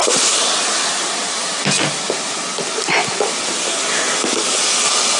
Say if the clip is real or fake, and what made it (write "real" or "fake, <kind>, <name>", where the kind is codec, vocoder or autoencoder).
real